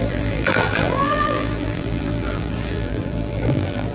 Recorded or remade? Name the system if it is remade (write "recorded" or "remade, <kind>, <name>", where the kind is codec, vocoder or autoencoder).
remade, vocoder, BigVGAN v2